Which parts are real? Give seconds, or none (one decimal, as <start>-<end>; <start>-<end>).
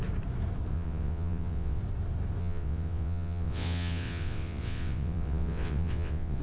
0.0-0.7; 1.8-2.4